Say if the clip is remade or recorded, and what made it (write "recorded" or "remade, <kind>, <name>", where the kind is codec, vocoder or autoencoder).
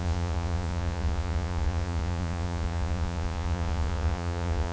remade, vocoder, Vocos